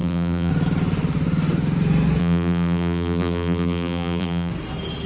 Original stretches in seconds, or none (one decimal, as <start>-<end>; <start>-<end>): 0.5-2.2; 4.5-5.1